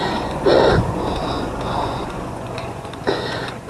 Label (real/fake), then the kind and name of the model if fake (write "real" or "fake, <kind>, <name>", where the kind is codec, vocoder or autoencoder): fake, vocoder, Vocos